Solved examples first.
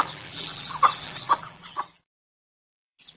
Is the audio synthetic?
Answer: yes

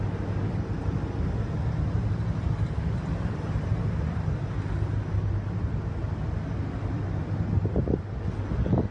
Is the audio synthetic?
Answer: no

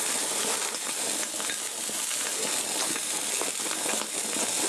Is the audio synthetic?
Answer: no